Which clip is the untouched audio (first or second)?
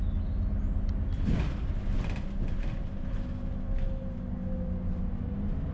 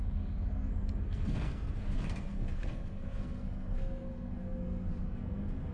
first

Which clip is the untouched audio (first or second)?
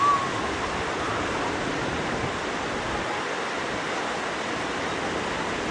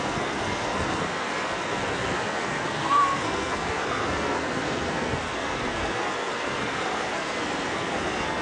first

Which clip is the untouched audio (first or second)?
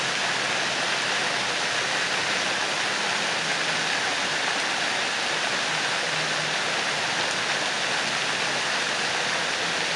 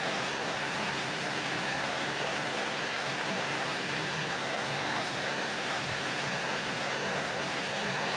first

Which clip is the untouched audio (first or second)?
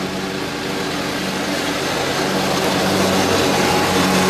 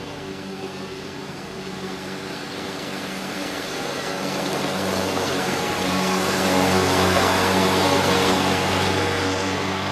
first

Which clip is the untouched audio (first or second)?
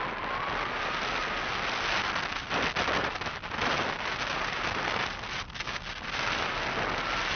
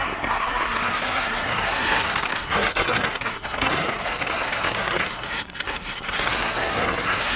first